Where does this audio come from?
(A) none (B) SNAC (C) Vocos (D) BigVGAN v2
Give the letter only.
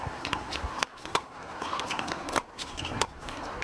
B